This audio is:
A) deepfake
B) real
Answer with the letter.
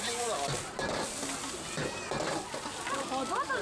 B